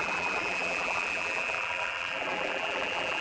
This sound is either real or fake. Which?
fake